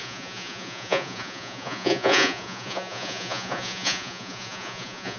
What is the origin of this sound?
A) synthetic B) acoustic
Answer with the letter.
A